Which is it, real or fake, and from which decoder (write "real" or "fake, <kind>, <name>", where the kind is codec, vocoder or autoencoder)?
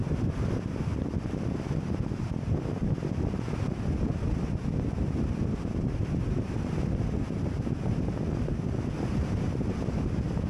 real